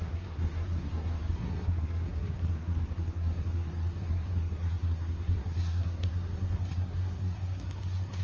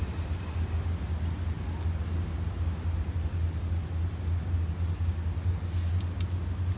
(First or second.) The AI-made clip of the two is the first